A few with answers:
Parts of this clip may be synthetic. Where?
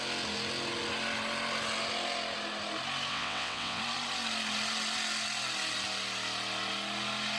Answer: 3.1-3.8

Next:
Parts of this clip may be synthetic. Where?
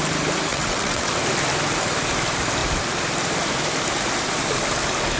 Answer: 0.5-1.1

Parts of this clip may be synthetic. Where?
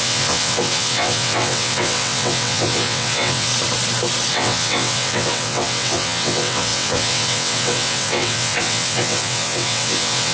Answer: 0.0-3.5; 4.3-10.3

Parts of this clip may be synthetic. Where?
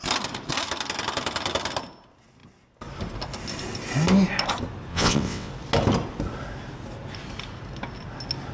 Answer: 4.9-5.5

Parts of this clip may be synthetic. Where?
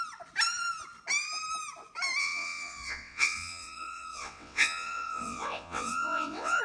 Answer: 2.2-6.6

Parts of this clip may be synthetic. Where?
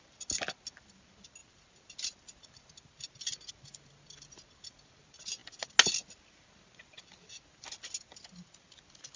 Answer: none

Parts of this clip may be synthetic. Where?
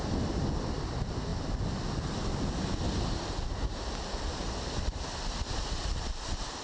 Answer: none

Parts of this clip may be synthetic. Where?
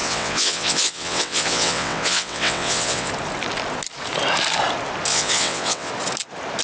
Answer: 0.0-3.1; 5.1-5.9